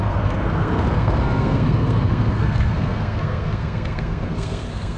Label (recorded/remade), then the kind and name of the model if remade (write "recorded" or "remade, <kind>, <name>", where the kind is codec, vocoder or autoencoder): remade, codec, SNAC